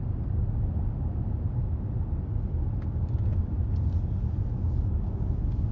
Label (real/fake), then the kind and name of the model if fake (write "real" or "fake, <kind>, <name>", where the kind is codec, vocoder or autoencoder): real